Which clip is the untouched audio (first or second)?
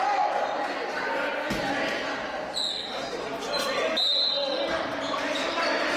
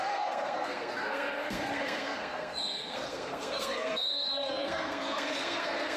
first